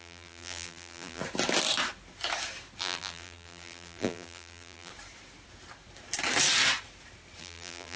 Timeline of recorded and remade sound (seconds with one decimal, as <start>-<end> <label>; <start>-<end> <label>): 0.0-1.2 remade; 1.2-2.8 recorded; 2.8-4.9 remade; 4.9-7.4 recorded; 7.4-8.0 remade